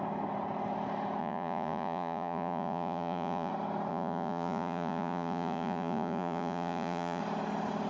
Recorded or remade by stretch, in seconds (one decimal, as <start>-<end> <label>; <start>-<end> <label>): 0.0-1.2 recorded; 1.2-3.5 remade; 3.5-3.9 recorded; 3.9-7.2 remade; 7.2-7.9 recorded